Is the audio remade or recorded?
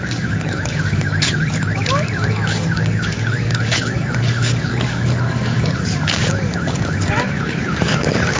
remade